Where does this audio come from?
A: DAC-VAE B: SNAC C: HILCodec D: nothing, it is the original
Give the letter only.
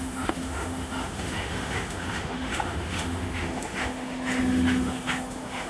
A